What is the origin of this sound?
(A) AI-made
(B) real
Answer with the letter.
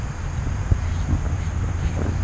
B